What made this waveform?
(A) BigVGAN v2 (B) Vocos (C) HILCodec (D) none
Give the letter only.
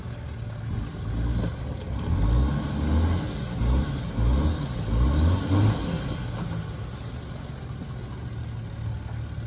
D